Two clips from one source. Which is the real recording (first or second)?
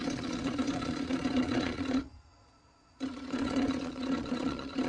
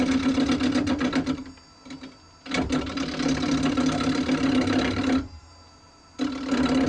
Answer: second